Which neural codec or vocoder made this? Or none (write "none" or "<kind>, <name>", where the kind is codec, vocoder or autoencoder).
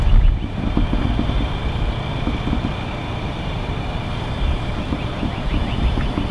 none